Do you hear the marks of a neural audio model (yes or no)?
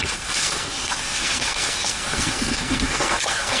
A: yes